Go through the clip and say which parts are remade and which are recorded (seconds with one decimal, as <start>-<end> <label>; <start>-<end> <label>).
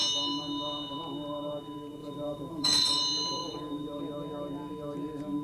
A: 0.0-2.0 recorded; 2.0-3.0 remade; 3.0-3.4 recorded; 3.4-4.0 remade; 4.0-5.4 recorded